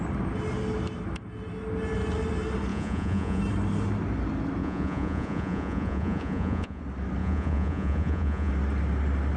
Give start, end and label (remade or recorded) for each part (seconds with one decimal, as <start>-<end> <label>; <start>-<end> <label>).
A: 0.0-2.7 recorded; 2.7-3.4 remade; 3.4-4.6 recorded; 4.6-6.8 remade; 6.8-7.2 recorded; 7.2-8.5 remade; 8.5-9.4 recorded